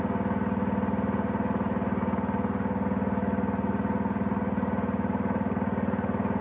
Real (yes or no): yes